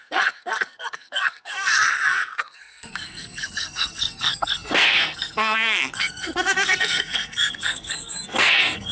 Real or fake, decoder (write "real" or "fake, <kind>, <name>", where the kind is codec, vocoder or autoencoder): fake, codec, SNAC